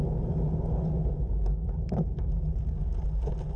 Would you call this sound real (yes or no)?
yes